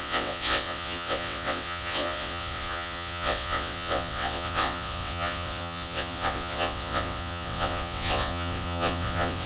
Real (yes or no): no